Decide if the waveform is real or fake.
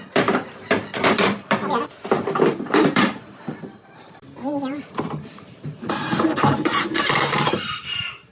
fake